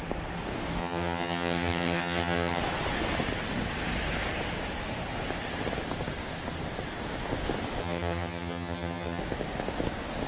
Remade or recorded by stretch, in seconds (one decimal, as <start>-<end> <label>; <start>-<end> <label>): 0.0-0.8 recorded; 0.8-2.6 remade; 2.6-7.8 recorded; 7.8-9.2 remade; 9.2-10.3 recorded